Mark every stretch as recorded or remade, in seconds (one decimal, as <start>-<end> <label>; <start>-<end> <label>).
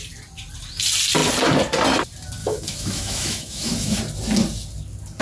0.0-2.4 recorded; 2.4-4.0 remade; 4.0-5.2 recorded